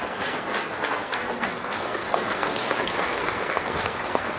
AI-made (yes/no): yes